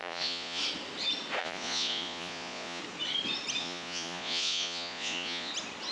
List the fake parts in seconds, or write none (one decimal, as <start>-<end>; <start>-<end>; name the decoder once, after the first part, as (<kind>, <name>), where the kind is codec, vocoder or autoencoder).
0.0-0.6 (vocoder, Vocos); 1.4-2.8; 3.6-5.5